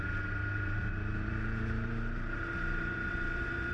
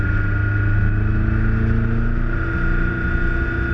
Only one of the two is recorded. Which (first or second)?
second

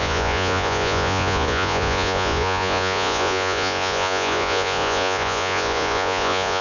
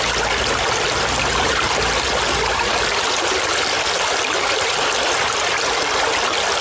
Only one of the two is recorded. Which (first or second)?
second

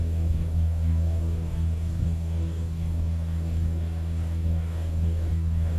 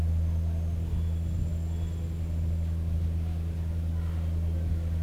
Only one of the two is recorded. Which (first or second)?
second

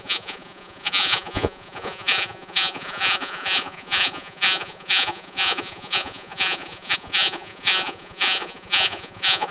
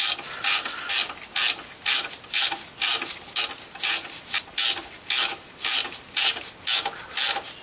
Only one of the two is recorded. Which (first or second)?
second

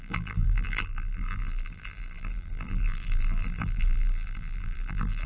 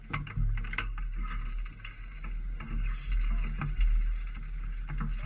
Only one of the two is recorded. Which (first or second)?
second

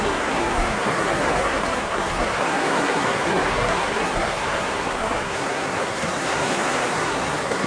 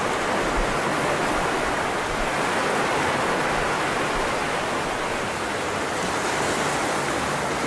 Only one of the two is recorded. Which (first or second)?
second